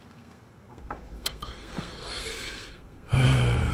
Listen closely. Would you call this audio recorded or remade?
remade